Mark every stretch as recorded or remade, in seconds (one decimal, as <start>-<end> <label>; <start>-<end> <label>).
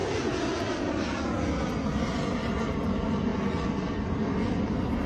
0.0-5.1 recorded